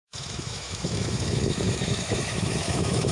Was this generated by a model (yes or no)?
yes